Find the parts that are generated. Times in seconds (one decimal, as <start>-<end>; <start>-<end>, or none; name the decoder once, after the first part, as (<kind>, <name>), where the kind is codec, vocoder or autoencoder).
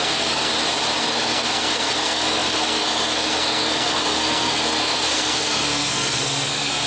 0.0-0.5 (codec, SNAC); 1.0-6.9